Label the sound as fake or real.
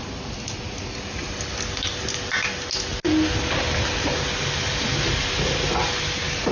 real